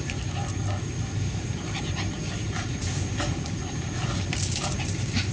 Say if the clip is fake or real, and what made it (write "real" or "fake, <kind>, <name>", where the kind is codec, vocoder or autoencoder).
fake, vocoder, BigVGAN v2